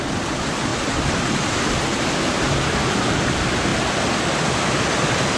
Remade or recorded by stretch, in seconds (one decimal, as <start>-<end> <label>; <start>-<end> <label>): 0.0-3.7 remade; 3.7-4.4 recorded; 4.4-5.4 remade